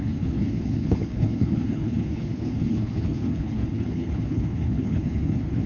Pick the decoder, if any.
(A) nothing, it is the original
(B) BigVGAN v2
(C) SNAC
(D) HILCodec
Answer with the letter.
D